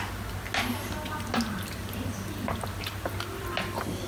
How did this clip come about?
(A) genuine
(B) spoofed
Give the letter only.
A